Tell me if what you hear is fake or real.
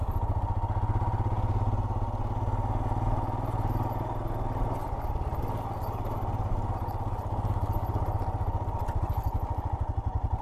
real